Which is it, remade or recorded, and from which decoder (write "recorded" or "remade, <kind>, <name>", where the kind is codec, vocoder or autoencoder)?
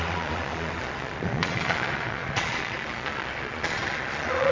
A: remade, vocoder, Vocos